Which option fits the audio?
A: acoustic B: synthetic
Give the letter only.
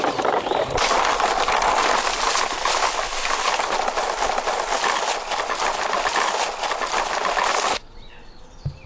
A